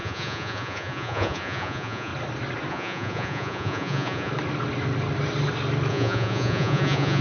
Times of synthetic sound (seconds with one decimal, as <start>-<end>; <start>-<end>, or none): 0.0-2.1; 2.7-4.3; 5.9-7.2